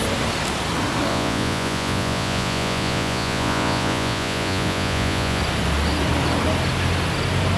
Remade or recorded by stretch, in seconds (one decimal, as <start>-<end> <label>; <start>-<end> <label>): 0.0-1.1 recorded; 1.1-5.4 remade; 5.4-7.6 recorded